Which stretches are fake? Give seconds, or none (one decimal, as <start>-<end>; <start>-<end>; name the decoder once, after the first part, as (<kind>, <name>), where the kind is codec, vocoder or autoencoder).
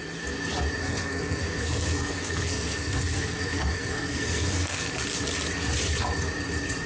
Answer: 0.8-4.9 (codec, SNAC)